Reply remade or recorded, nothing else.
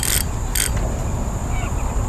recorded